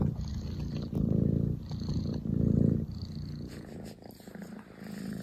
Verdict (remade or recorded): recorded